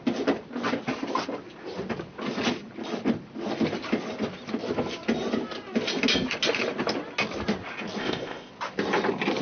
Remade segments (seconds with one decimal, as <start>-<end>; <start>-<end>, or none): 8.0-8.5